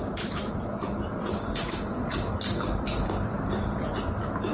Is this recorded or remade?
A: recorded